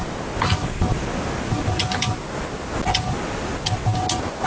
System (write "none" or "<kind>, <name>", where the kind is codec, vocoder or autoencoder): none